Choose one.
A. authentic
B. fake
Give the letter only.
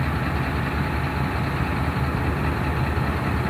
A